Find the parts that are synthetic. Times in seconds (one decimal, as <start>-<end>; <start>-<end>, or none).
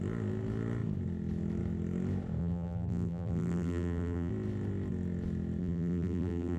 2.4-4.3; 5.6-6.6